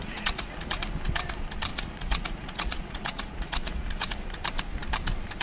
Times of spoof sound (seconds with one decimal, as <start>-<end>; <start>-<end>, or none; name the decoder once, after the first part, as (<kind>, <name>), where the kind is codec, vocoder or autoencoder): 0.0-0.8 (vocoder, Vocos); 1.7-4.1